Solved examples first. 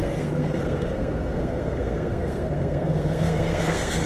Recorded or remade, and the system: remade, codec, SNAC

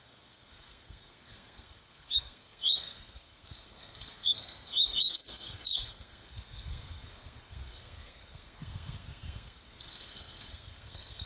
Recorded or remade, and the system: remade, codec, SNAC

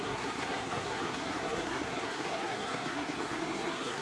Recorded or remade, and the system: remade, codec, SNAC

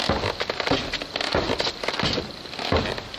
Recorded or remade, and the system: recorded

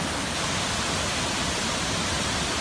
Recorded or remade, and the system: recorded